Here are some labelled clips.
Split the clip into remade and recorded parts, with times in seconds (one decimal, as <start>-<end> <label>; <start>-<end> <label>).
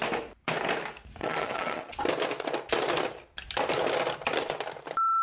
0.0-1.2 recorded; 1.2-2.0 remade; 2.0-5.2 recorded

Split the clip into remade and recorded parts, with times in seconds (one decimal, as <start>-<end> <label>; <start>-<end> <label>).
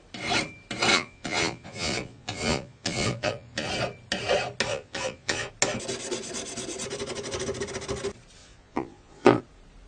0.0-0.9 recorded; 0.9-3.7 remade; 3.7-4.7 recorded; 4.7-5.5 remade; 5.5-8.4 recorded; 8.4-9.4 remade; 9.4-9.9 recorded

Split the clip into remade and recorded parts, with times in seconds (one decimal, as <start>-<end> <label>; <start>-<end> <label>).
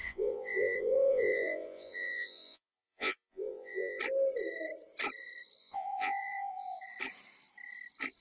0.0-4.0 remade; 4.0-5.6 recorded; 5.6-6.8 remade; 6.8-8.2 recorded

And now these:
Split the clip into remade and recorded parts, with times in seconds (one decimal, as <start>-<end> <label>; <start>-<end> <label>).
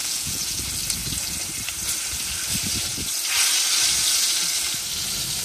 0.0-0.6 remade; 0.6-5.4 recorded